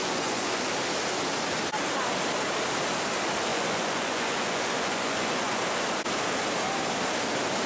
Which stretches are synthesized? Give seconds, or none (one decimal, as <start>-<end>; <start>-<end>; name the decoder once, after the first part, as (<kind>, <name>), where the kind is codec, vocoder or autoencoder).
0.0-0.6 (vocoder, Vocos); 3.5-5.6